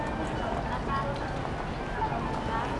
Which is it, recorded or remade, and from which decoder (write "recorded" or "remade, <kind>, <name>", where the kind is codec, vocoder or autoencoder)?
recorded